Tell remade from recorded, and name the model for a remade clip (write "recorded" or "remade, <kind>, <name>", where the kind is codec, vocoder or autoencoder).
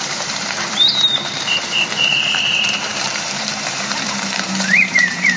remade, vocoder, BigVGAN v2